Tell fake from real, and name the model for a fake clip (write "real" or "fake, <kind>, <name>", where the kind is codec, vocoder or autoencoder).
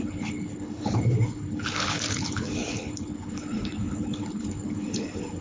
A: fake, codec, HILCodec